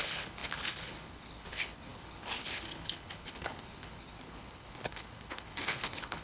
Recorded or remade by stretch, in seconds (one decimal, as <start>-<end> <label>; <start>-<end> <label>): 0.0-6.2 remade